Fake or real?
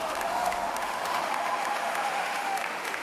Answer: fake